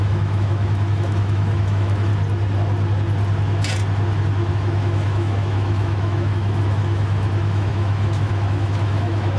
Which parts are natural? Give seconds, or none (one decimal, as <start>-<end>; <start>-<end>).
2.1-4.5